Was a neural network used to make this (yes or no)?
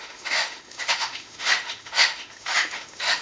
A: yes